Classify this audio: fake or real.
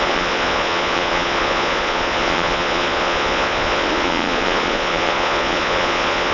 fake